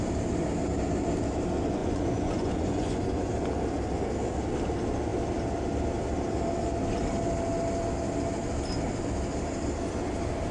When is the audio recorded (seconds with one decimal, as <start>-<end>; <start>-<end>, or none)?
0.0-1.8; 3.3-10.5